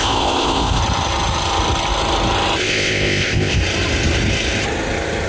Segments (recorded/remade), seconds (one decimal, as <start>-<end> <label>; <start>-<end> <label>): 0.0-0.8 remade; 0.8-2.6 recorded; 2.6-3.6 remade; 3.6-5.3 recorded